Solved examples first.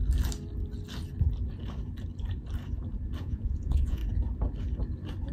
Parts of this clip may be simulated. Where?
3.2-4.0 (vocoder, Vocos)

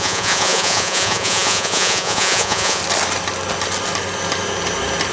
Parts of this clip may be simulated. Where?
0.0-2.8 (vocoder, Vocos)

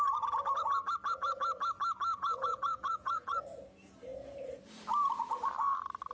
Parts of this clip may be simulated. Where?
2.1-3.4 (vocoder, Vocos)

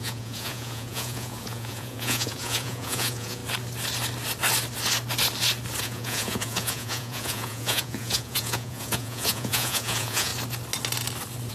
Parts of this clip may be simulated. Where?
0.0-3.4 (vocoder, Vocos); 5.8-10.3

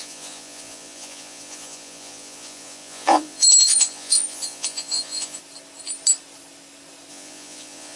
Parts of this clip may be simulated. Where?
0.0-5.4 (vocoder, Vocos); 7.1-8.0